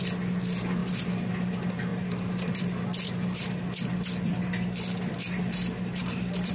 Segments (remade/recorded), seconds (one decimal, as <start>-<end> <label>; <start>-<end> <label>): 0.0-6.5 recorded